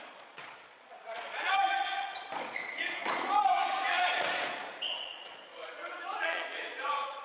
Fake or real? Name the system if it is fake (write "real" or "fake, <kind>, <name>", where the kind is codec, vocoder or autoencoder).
fake, vocoder, Vocos